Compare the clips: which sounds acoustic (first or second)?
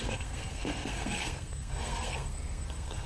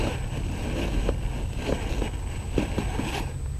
second